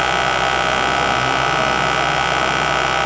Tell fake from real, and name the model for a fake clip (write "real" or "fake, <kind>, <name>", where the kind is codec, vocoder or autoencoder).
real